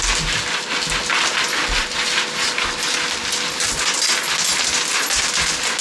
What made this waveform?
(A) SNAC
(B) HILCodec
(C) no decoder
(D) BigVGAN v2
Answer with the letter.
C